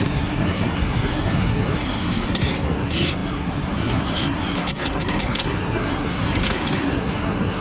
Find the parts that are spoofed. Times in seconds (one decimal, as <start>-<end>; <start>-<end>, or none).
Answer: 0.0-7.6